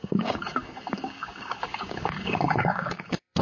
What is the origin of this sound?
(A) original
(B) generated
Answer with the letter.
B